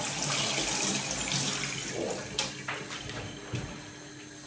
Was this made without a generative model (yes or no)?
yes